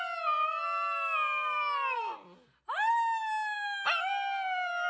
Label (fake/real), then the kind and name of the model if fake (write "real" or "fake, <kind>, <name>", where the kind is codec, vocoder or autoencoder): real